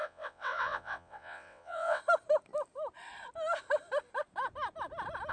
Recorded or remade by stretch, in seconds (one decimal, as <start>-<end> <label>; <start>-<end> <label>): 0.0-2.0 remade; 2.0-5.3 recorded